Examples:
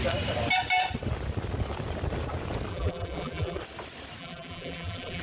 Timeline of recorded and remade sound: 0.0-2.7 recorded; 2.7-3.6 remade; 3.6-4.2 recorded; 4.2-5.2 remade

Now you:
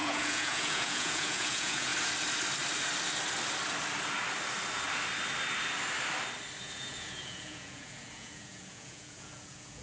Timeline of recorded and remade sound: 0.0-1.9 remade; 1.9-6.6 recorded; 6.6-9.8 remade

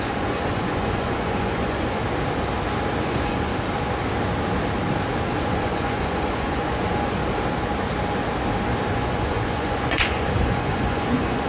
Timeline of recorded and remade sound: 0.0-2.0 remade; 2.0-3.0 recorded; 3.0-3.5 remade; 3.5-5.4 recorded; 5.4-7.2 remade; 7.2-8.9 recorded; 8.9-11.5 remade